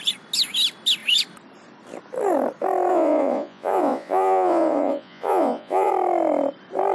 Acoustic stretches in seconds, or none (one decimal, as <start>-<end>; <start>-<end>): 0.0-2.9; 5.9-6.9

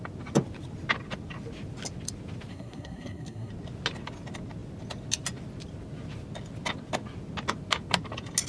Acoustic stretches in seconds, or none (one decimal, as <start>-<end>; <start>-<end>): 0.0-2.5; 3.5-8.5

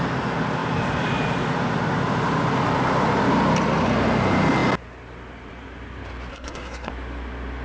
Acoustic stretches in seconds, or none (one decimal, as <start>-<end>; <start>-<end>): 0.0-6.3; 6.9-7.6

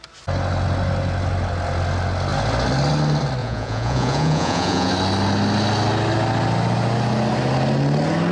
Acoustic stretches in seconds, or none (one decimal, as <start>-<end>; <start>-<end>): 0.0-3.4; 4.9-8.3

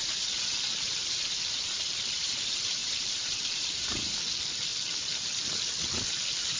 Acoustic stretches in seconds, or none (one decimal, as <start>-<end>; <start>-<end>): 0.0-2.8; 4.2-6.6

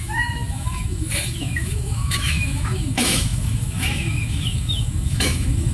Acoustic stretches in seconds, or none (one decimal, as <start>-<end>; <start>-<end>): none

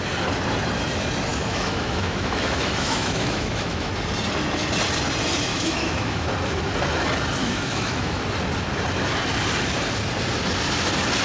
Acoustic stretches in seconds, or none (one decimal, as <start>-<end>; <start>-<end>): 0.0-1.3; 3.9-5.5; 6.3-7.4; 8.2-11.2